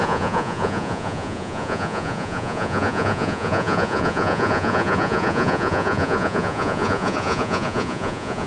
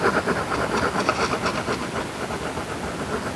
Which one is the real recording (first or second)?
second